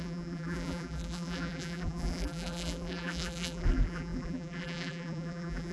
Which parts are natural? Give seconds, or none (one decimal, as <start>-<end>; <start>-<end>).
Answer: none